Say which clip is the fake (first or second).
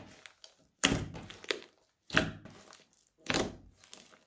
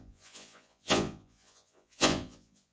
second